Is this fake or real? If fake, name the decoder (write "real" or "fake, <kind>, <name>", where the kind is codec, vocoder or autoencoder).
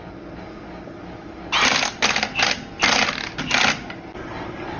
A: real